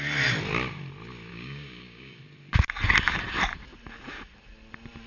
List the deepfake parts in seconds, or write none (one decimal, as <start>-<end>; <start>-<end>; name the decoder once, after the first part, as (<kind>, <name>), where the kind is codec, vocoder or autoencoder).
1.3-2.2 (codec, DAC)